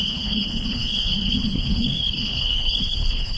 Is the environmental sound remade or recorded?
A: remade